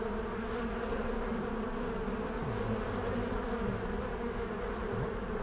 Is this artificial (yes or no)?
yes